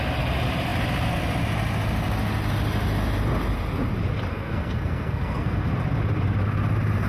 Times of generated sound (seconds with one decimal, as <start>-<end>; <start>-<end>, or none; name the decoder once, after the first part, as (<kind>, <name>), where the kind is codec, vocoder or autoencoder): 4.3-5.7 (codec, SNAC)